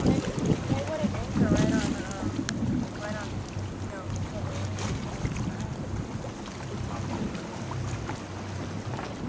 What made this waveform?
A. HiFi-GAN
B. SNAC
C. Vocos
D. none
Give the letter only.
D